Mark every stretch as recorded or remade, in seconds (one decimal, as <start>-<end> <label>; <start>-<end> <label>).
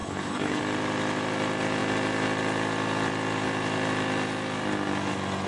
0.0-0.6 remade; 0.6-5.5 recorded